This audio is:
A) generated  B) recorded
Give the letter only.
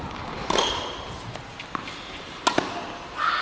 B